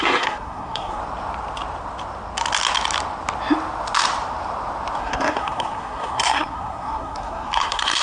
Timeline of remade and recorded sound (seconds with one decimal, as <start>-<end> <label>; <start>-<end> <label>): 0.0-1.0 remade; 1.0-5.0 recorded; 5.0-8.0 remade